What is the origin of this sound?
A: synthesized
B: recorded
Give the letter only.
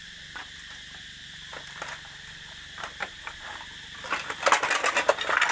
B